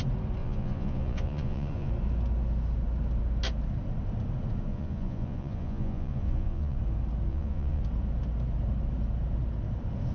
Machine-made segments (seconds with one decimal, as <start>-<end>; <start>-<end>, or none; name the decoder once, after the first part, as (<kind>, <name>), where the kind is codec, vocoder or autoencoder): 0.4-1.9 (vocoder, Vocos); 4.7-6.8; 7.3-7.8